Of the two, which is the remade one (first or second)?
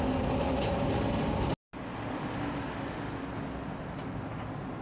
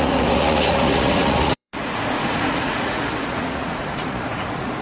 second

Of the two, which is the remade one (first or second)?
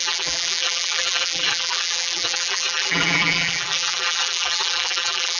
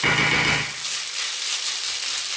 first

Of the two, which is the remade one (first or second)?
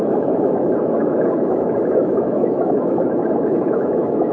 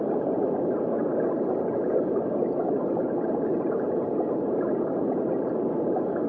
first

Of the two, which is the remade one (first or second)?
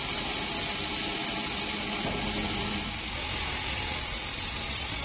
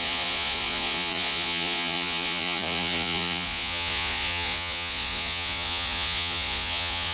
second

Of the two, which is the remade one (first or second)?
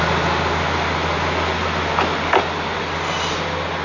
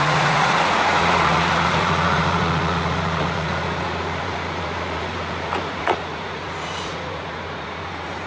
second